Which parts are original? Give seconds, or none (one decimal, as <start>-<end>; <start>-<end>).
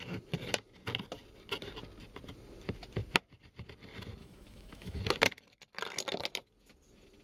0.0-4.2; 5.0-7.2